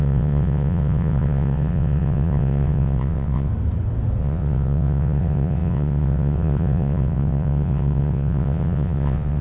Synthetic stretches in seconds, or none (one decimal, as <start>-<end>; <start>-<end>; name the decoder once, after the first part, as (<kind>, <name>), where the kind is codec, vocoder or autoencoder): 0.0-3.5 (vocoder, WaveNeXt); 4.2-9.4

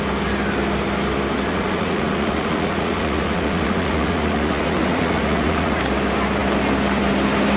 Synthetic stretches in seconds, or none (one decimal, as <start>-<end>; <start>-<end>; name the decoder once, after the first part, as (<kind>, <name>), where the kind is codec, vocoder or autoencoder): 1.5-5.8 (vocoder, Vocos)

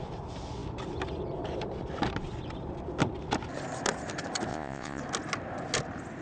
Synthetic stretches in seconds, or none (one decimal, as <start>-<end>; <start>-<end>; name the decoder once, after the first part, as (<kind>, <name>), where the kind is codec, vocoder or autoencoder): 4.5-5.0 (vocoder, Vocos)

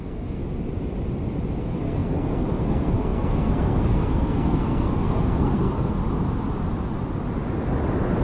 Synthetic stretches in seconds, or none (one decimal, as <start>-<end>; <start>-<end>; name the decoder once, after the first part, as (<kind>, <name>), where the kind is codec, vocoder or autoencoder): 0.0-0.4 (codec, SNAC); 1.6-6.0

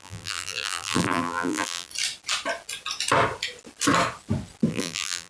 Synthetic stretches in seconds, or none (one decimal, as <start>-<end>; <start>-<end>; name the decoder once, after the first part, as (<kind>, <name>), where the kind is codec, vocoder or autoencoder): 0.0-1.9 (vocoder, BigVGAN v2); 4.7-5.3